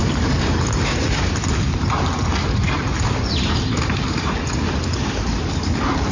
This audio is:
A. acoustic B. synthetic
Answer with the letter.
A